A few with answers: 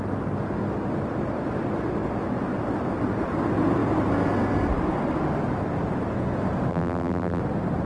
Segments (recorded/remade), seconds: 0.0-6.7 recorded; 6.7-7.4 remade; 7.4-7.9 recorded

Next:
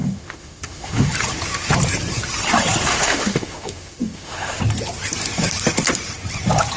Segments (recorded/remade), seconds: 0.0-1.1 remade; 1.1-2.9 recorded; 2.9-4.6 remade; 4.6-6.8 recorded

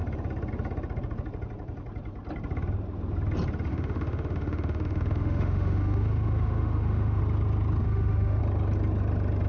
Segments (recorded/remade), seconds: 0.0-3.7 recorded; 3.7-7.2 remade; 7.2-7.8 recorded; 7.8-8.4 remade; 8.4-9.5 recorded